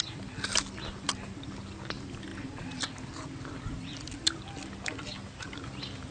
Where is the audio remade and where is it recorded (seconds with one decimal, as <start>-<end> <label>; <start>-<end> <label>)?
0.0-6.1 recorded